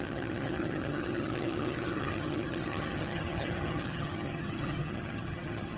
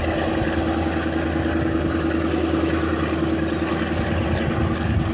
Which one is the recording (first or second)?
second